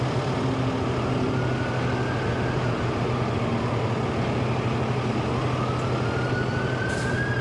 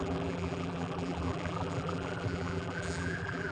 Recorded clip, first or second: first